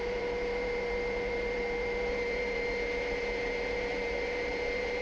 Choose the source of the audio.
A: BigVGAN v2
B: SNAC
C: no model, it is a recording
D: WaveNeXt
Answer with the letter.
A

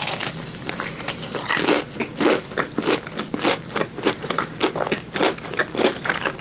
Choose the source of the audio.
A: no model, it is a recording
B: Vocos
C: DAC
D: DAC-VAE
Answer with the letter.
A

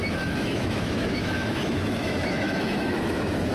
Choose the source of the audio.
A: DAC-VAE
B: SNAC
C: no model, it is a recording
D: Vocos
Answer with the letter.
A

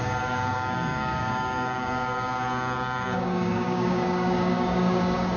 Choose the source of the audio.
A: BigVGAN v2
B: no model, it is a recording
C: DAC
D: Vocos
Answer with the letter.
C